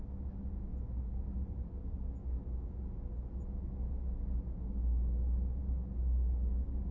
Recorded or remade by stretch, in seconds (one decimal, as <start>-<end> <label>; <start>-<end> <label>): 0.0-2.2 recorded; 2.2-2.8 remade; 2.8-6.9 recorded